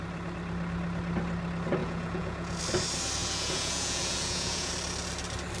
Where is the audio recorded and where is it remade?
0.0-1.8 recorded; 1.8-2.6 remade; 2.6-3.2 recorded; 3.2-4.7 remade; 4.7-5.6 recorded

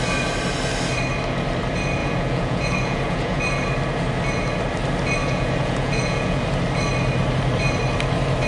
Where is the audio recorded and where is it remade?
0.0-2.0 recorded; 2.0-3.4 remade; 3.4-5.2 recorded; 5.2-6.4 remade; 6.4-8.5 recorded